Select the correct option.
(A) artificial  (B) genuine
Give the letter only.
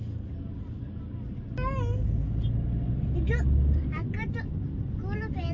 B